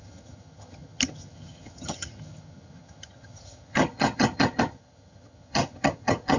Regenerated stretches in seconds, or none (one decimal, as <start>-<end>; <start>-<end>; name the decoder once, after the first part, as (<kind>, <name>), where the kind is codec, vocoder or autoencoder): 0.0-6.4 (vocoder, HiFi-GAN)